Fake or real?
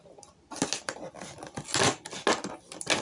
real